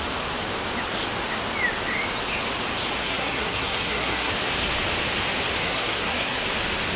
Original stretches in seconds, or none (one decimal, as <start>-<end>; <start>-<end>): 0.0-3.0; 4.3-5.6; 6.4-7.0